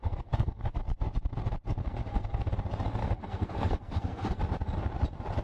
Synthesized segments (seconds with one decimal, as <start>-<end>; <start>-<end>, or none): 0.0-0.8; 1.8-2.5; 3.0-4.4